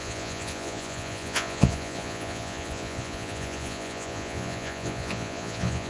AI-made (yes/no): yes